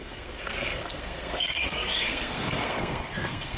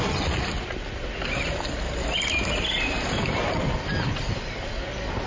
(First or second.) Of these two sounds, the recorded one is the second